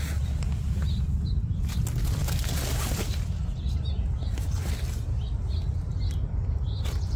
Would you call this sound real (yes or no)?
yes